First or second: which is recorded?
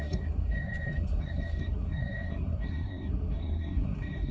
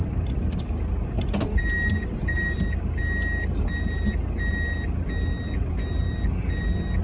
second